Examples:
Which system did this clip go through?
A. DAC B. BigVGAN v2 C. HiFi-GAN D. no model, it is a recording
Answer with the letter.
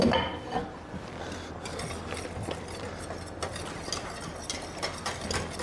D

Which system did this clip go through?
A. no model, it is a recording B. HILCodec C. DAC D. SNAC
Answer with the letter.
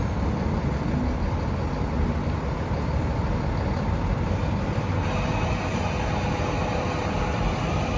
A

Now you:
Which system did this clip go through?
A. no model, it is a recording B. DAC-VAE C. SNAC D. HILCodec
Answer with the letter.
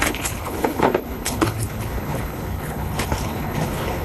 D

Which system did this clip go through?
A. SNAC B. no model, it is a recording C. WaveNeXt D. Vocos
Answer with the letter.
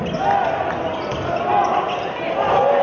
B